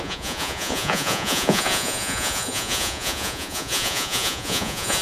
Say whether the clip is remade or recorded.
remade